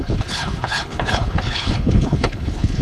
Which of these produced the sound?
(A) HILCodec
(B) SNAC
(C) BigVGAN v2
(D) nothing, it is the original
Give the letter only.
A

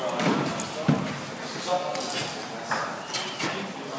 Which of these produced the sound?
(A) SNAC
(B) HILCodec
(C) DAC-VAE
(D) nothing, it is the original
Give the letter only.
D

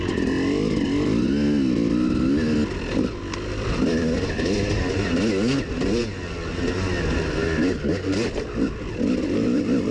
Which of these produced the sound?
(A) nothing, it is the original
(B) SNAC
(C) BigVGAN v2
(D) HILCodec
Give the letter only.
A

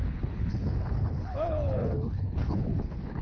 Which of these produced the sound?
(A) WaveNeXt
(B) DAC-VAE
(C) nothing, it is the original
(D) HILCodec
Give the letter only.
D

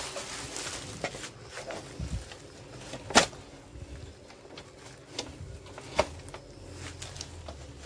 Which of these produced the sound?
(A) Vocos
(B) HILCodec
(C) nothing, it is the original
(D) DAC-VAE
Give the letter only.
C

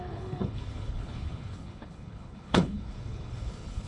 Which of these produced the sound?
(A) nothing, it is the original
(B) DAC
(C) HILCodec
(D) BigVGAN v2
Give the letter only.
C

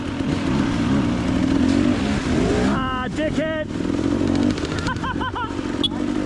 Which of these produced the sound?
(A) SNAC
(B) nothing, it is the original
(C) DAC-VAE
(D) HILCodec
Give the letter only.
B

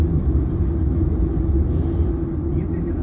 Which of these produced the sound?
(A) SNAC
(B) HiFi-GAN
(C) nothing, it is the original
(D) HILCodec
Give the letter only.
C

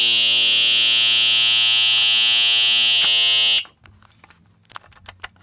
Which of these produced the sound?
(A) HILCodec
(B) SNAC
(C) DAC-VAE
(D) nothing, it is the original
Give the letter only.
D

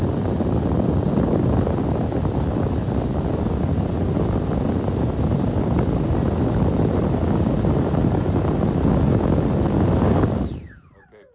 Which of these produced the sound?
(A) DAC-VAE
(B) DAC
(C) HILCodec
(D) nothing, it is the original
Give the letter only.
D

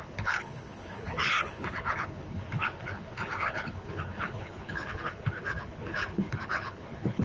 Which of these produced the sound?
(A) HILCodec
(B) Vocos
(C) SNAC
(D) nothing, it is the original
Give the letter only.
A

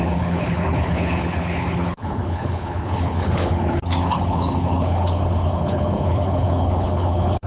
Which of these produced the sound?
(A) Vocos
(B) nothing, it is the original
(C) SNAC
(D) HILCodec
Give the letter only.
D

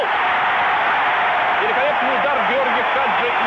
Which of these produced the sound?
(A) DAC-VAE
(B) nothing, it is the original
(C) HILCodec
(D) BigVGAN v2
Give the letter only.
B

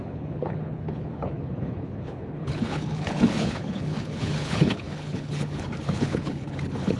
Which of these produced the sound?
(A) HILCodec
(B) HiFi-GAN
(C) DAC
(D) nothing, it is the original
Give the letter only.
A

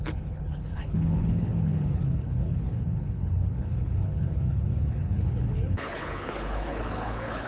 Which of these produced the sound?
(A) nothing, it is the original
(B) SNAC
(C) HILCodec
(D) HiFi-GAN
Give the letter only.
C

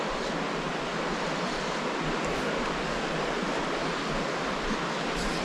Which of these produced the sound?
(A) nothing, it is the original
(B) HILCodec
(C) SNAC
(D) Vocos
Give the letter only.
A